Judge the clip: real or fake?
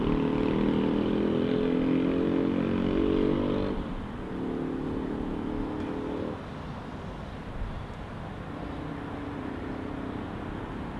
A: real